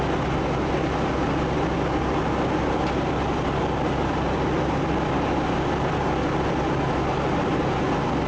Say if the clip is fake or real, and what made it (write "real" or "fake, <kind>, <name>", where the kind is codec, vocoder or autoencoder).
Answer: real